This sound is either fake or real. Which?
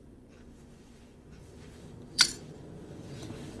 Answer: fake